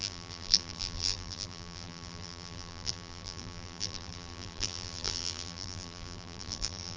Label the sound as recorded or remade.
remade